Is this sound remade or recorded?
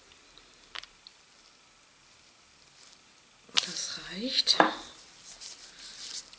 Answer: recorded